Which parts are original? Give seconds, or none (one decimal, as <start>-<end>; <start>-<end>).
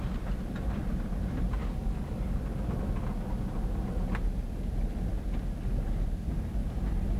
0.0-1.6; 2.2-7.2